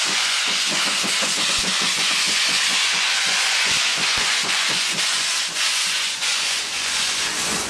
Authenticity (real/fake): fake